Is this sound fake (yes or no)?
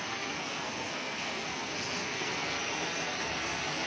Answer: yes